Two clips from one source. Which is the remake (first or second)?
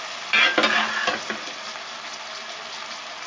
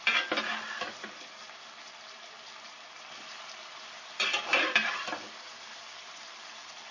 second